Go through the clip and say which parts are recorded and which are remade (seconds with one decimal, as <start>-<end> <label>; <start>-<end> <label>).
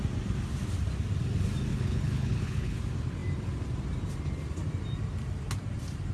0.0-1.7 recorded; 1.7-2.8 remade; 2.8-6.1 recorded